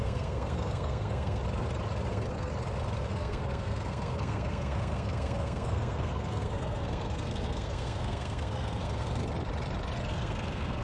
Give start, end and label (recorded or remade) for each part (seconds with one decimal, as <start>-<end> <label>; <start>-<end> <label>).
0.0-1.4 remade; 1.4-2.1 recorded; 2.1-2.5 remade; 2.5-3.1 recorded; 3.1-9.2 remade; 9.2-10.1 recorded; 10.1-10.8 remade

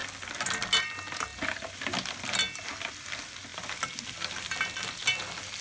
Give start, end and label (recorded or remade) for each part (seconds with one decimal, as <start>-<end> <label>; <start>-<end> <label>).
0.0-5.6 recorded

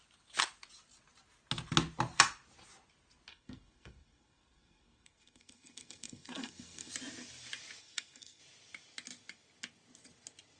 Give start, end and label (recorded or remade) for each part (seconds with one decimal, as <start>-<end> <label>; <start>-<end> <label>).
0.0-3.3 recorded; 3.3-6.9 remade; 6.9-7.8 recorded; 7.8-8.4 remade; 8.4-10.6 recorded

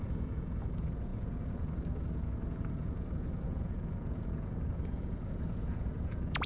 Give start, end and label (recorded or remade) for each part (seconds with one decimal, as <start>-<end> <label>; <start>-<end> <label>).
0.0-6.5 remade

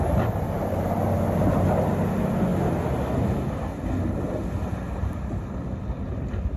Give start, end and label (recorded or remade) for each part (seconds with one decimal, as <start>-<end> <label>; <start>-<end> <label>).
0.0-6.6 recorded

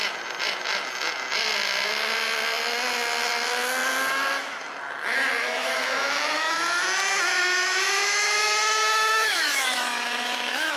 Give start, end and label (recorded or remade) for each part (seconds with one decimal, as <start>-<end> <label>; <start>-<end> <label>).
0.0-5.4 recorded; 5.4-6.8 remade; 6.8-7.3 recorded; 7.3-10.8 remade

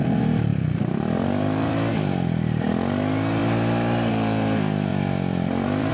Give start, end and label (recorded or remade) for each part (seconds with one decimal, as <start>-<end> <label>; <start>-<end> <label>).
0.0-0.5 recorded; 0.5-1.9 remade; 1.9-4.9 recorded; 4.9-5.9 remade